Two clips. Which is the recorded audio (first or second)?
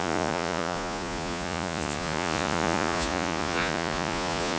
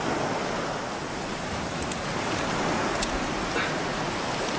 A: second